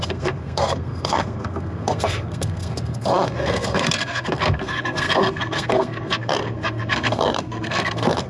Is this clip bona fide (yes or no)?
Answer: no